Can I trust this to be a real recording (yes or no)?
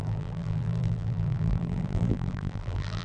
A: no